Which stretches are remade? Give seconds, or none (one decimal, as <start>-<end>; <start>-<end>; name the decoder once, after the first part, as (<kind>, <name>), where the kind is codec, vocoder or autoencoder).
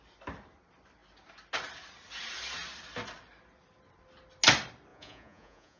4.9-5.8 (vocoder, Vocos)